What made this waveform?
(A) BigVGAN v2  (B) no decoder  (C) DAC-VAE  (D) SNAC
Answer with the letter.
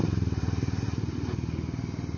B